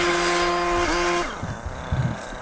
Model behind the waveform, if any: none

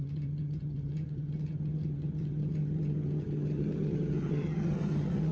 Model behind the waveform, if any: vocoder, HiFi-GAN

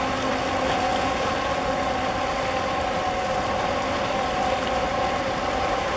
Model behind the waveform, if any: none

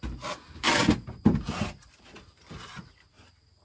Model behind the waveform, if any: none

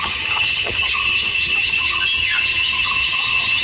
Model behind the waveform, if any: vocoder, HiFi-GAN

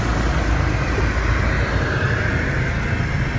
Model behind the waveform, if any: none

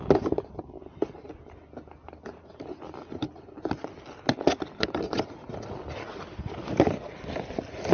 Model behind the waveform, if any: none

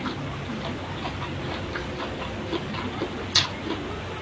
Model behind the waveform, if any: none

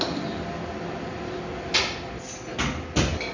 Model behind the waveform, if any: none